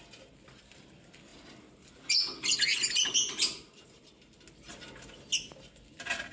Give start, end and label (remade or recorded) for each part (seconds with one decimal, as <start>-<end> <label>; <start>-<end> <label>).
0.0-6.3 recorded